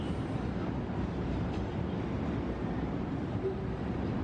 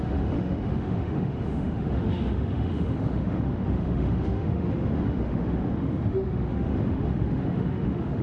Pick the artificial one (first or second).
second